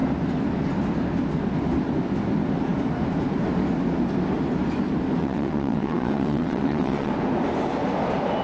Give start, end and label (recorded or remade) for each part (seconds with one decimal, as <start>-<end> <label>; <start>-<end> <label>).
0.0-5.2 recorded; 5.2-7.1 remade; 7.1-8.4 recorded